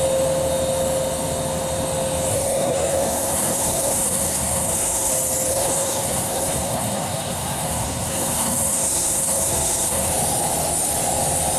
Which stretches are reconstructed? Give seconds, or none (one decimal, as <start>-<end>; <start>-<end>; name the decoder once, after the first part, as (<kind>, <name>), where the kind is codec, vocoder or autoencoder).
2.3-5.1 (codec, SNAC); 5.5-10.1